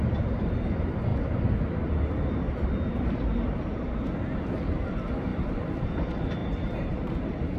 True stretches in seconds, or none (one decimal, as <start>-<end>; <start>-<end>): 0.0-5.3; 5.9-6.4